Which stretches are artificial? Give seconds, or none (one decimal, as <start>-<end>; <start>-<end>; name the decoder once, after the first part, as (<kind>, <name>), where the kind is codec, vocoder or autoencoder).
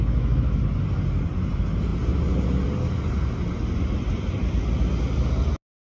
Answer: 0.0-0.6 (autoencoder, DAC-VAE)